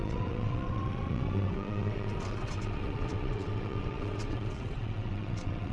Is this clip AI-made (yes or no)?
yes